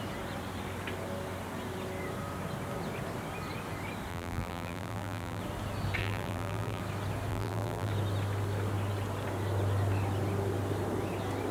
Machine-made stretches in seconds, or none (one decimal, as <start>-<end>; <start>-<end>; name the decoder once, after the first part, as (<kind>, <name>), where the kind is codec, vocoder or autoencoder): 4.1-5.4 (vocoder, BigVGAN v2); 6.0-6.8; 7.3-7.9